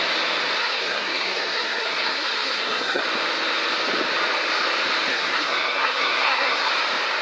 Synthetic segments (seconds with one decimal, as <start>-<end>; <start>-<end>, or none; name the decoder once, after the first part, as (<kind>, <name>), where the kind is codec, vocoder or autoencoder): 0.6-3.0 (codec, SNAC); 5.1-6.7